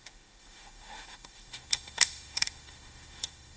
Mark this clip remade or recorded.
remade